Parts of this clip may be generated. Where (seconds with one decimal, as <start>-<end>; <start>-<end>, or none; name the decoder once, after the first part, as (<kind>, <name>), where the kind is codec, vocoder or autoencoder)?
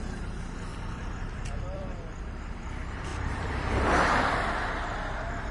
0.7-2.6 (vocoder, BigVGAN v2); 3.1-4.5